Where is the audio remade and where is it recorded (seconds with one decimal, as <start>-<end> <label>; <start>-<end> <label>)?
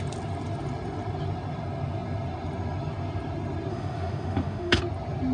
0.0-3.7 recorded; 3.7-4.8 remade; 4.8-5.3 recorded